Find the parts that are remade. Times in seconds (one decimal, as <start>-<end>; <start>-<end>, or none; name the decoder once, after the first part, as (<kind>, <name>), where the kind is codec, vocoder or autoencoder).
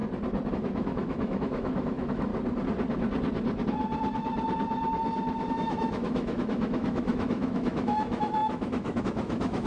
0.5-2.3 (autoencoder, DAC-VAE); 5.5-9.7